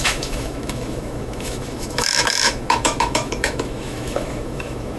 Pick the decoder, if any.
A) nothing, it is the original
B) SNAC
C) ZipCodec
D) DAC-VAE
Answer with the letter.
D